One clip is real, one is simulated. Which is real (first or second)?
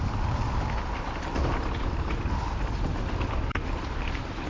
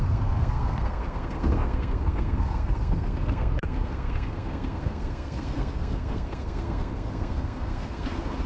first